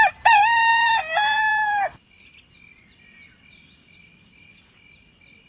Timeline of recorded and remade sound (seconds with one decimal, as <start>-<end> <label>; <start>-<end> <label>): 0.0-5.5 remade